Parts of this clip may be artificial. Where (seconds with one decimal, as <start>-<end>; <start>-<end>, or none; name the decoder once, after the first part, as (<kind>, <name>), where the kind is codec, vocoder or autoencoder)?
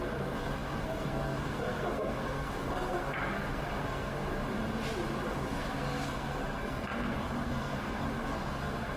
0.0-4.4 (codec, SNAC); 5.3-9.0